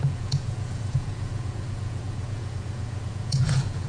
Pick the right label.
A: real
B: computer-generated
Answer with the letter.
B